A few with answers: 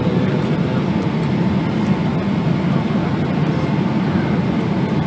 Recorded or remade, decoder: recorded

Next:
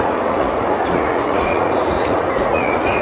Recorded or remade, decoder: remade, vocoder, Vocos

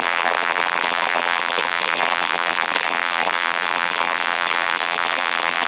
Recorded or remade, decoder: remade, vocoder, BigVGAN v2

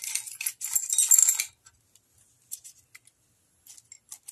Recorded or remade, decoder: recorded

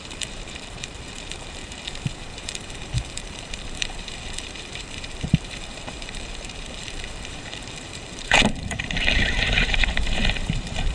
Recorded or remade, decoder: remade, vocoder, BigVGAN v2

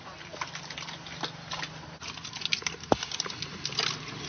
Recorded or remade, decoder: recorded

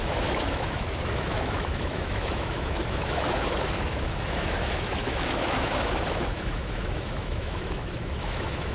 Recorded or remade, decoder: remade, autoencoder, DAC-VAE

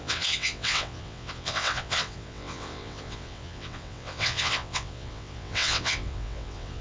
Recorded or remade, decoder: remade, vocoder, WaveNeXt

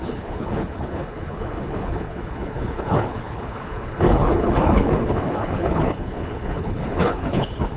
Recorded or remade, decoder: remade, codec, HILCodec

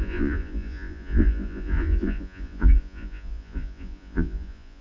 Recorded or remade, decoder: remade, vocoder, Vocos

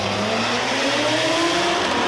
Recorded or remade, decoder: remade, vocoder, BigVGAN v2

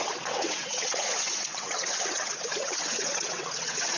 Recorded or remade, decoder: remade, vocoder, WaveNeXt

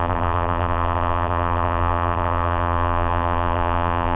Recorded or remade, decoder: remade, vocoder, BigVGAN v2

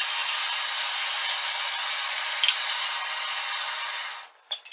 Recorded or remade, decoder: recorded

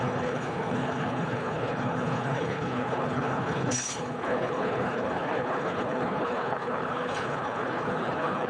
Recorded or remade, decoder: remade, codec, HILCodec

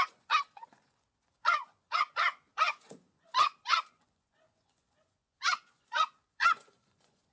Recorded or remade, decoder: remade, vocoder, Vocos